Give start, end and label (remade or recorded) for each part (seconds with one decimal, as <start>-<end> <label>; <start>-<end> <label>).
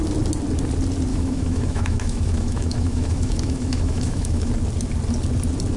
0.0-1.1 recorded; 1.1-4.5 remade; 4.5-5.8 recorded